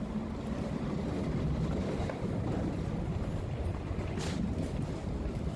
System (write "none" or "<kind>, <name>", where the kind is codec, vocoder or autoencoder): none